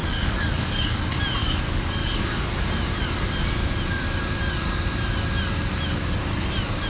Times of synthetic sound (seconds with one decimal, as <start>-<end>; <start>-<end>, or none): 0.0-1.0; 1.4-2.2